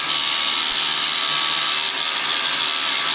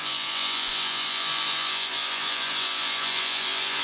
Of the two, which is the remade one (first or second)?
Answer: second